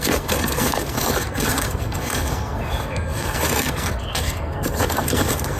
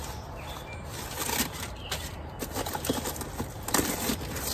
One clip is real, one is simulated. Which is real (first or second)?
second